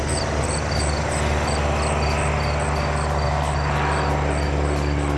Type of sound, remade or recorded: recorded